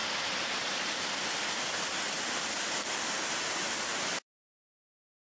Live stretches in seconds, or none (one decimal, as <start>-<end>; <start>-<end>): 2.5-3.9